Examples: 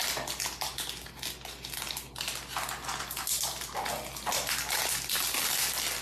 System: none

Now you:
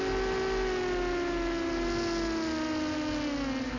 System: none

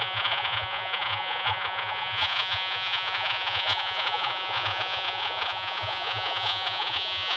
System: vocoder, Vocos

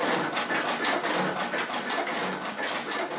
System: none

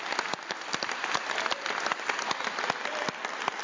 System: none